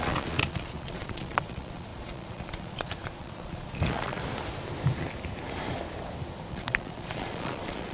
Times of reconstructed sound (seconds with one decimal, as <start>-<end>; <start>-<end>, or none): 0.0-4.2; 6.5-7.9